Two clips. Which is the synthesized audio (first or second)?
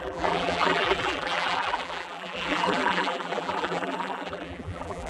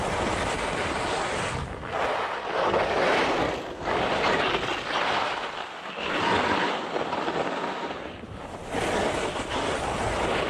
first